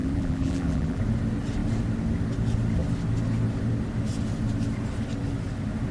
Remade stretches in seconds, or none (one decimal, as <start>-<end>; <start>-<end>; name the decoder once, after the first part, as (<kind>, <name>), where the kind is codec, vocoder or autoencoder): 0.0-1.0 (vocoder, BigVGAN v2)